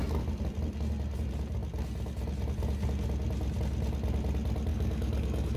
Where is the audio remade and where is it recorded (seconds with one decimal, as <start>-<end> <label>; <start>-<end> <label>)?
0.0-4.7 recorded; 4.7-5.6 remade